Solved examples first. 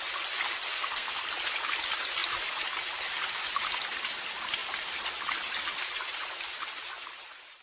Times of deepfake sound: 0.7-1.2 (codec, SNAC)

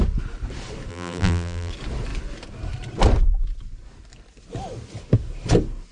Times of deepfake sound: 0.9-1.7 (vocoder, BigVGAN v2)

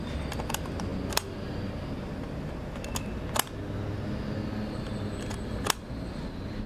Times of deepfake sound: none

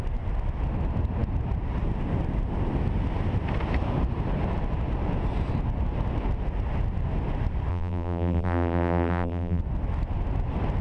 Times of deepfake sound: 7.7-9.6 (vocoder, BigVGAN v2)

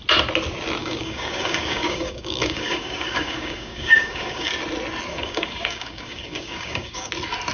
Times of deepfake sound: 0.8-4.5 (codec, DAC); 5.1-7.1

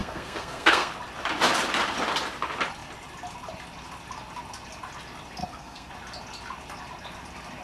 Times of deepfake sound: 0.0-0.9 (codec, SNAC); 5.4-5.9